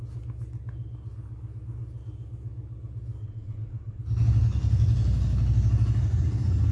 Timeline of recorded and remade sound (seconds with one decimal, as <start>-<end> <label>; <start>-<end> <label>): 0.0-3.2 recorded; 3.2-4.0 remade; 4.0-6.7 recorded